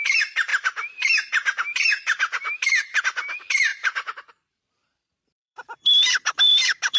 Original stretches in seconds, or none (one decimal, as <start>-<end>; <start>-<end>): none